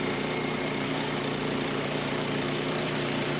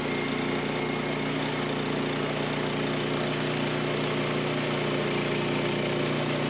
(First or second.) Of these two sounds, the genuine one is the second